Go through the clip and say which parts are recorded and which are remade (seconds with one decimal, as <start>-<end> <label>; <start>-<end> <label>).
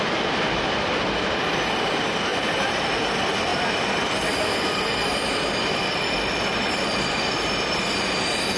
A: 0.0-2.3 recorded; 2.3-2.8 remade; 2.8-8.6 recorded